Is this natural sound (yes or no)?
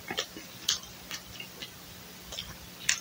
yes